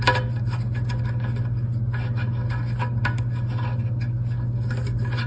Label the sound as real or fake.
real